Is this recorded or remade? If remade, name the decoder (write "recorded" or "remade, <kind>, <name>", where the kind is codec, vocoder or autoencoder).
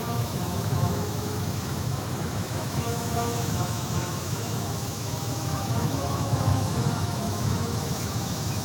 remade, autoencoder, DAC-VAE